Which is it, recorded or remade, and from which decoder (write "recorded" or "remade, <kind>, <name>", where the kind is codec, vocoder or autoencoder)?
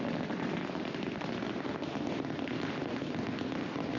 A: recorded